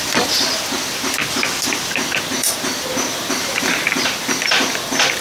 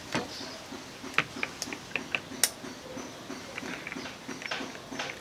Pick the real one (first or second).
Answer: second